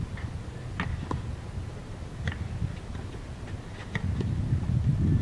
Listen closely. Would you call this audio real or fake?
real